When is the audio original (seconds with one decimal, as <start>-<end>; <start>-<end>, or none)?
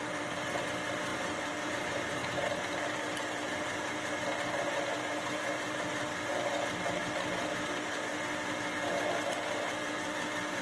0.0-1.1; 1.7-10.6